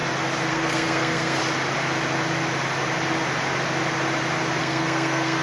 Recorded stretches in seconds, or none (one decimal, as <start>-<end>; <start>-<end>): 0.0-0.5; 1.4-4.6